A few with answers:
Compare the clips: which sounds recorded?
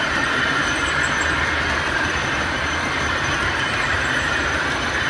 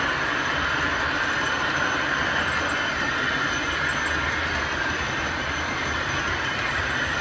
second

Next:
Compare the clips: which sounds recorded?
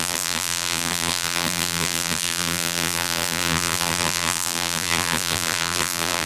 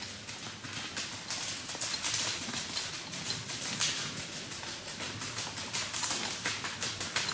second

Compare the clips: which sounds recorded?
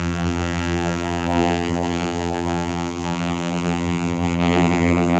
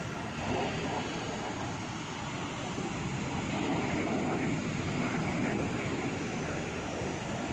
second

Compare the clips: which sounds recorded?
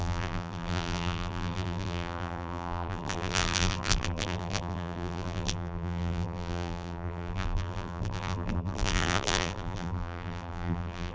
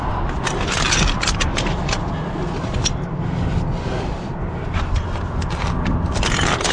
second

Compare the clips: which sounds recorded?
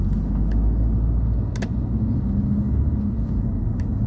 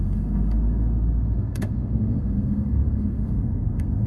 first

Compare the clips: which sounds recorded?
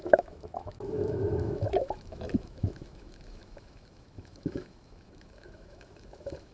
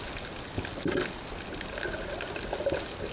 second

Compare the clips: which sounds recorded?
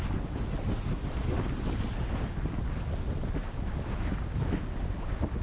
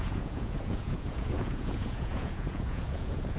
first